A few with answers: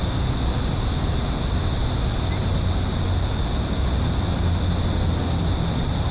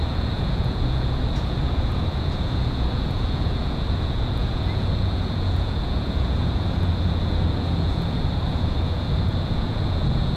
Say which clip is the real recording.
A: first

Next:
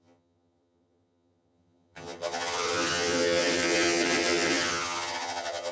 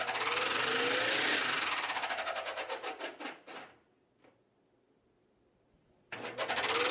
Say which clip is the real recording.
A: second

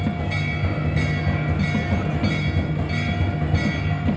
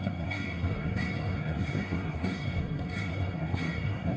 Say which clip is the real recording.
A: first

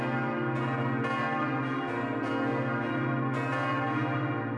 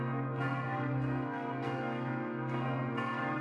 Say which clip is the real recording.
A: first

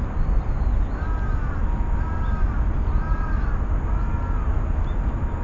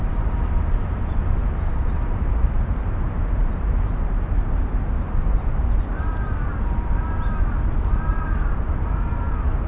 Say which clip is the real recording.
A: first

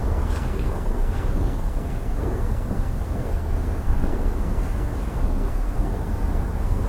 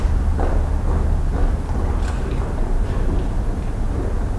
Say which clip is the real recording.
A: second